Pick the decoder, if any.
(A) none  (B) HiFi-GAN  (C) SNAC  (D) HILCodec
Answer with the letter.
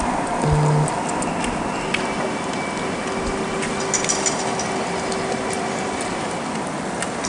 A